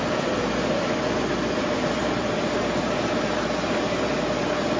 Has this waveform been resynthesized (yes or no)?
no